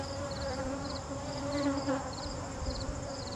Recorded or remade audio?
remade